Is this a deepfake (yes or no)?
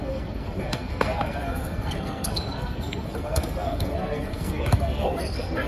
yes